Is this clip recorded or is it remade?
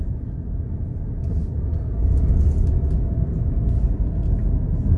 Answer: recorded